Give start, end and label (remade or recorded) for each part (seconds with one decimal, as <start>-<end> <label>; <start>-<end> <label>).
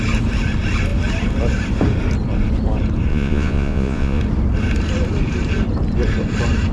0.0-3.1 recorded; 3.1-4.2 remade; 4.2-6.7 recorded